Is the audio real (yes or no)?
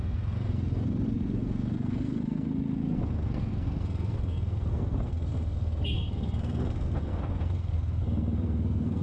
no